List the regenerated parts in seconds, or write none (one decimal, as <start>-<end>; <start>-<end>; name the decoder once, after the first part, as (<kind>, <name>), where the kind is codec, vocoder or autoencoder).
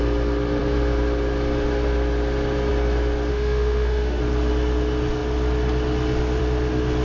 3.3-4.2 (autoencoder, DAC-VAE)